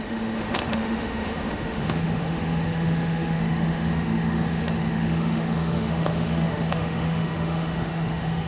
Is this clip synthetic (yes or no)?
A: yes